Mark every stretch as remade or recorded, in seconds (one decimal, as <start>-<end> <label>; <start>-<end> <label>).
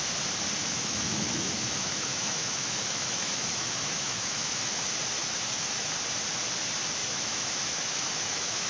0.0-0.6 recorded; 0.6-4.7 remade; 4.7-5.2 recorded; 5.2-5.9 remade; 5.9-7.0 recorded; 7.0-8.7 remade